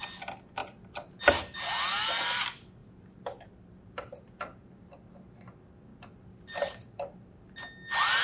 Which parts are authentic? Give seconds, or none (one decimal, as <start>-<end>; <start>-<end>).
0.0-2.8; 4.7-5.9; 7.4-8.2